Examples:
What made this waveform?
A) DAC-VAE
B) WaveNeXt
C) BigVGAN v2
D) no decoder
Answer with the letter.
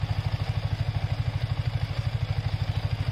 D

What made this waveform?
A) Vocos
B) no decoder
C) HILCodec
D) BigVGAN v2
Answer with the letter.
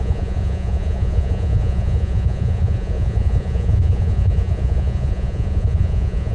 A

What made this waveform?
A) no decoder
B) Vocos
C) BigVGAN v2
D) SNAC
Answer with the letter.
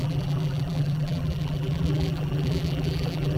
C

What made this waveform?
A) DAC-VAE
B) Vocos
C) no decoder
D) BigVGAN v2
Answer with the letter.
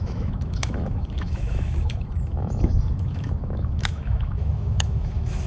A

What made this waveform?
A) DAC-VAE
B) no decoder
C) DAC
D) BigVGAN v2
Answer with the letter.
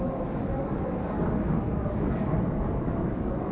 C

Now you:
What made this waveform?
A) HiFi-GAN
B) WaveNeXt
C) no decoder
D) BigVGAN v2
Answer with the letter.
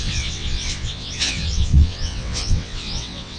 B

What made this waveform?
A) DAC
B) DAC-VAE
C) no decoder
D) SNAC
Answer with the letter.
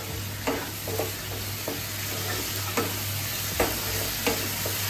C